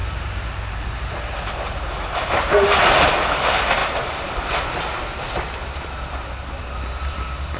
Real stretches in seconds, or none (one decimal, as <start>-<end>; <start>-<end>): 3.8-5.9